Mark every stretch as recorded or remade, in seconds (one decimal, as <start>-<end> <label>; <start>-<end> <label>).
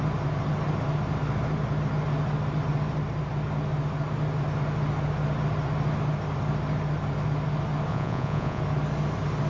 0.0-7.9 recorded; 7.9-8.6 remade; 8.6-9.5 recorded